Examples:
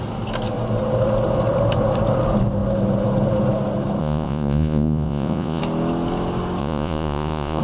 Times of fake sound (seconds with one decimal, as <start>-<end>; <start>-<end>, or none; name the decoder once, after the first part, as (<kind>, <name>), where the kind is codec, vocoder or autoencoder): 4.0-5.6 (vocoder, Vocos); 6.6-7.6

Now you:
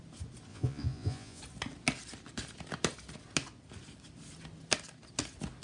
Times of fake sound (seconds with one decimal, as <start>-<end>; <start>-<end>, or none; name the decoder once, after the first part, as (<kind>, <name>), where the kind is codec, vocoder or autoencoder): 0.5-1.4 (vocoder, Vocos)

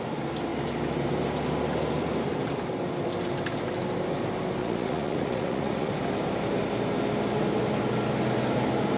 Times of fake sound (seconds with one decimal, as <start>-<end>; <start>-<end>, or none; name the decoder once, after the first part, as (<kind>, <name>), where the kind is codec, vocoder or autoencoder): 4.6-5.9 (vocoder, Vocos)

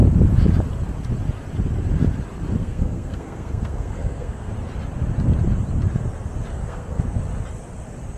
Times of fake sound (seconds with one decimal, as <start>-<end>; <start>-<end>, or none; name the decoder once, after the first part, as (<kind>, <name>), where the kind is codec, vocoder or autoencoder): 2.6-4.5 (codec, SNAC); 6.5-7.2

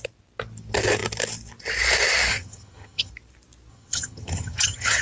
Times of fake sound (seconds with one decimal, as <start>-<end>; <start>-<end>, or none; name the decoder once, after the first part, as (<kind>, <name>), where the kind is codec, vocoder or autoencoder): 2.3-3.1 (vocoder, HiFi-GAN); 3.7-5.0

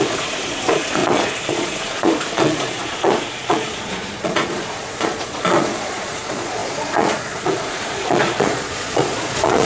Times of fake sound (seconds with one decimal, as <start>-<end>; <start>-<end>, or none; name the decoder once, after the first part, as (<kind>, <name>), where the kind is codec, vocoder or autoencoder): 0.0-9.6 (vocoder, Vocos)

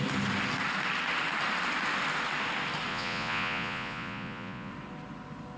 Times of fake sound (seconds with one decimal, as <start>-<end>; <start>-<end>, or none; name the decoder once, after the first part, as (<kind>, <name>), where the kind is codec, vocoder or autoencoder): 2.9-4.7 (vocoder, Vocos)

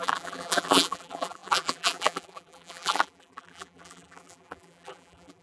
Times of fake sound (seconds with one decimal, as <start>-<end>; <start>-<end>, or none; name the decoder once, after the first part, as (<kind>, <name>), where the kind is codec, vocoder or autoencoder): 0.0-5.4 (vocoder, BigVGAN v2)